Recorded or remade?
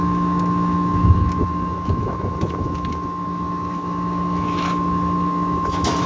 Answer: remade